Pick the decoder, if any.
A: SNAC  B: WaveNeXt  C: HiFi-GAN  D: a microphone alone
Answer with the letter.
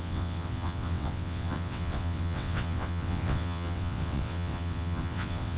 B